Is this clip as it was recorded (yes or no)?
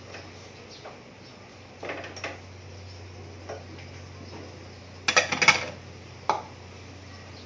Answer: yes